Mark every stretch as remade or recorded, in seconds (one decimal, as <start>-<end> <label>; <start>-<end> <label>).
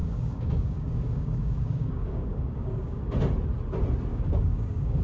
0.0-3.0 remade; 3.0-4.1 recorded; 4.1-5.0 remade